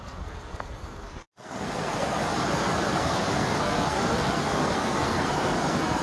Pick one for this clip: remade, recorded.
remade